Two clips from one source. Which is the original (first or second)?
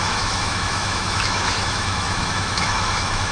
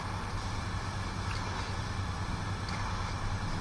second